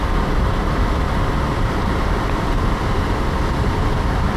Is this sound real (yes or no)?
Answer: no